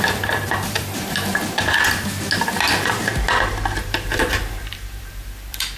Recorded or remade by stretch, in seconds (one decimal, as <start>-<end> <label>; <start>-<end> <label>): 0.0-1.3 remade; 1.3-3.8 recorded; 3.8-5.8 remade